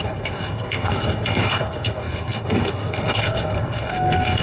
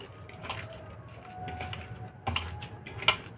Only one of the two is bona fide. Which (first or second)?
second